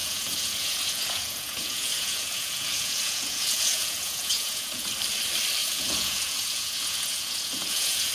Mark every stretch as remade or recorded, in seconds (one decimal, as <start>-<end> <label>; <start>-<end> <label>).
0.0-4.9 remade; 4.9-5.6 recorded; 5.6-8.1 remade